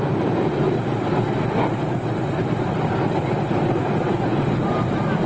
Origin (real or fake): fake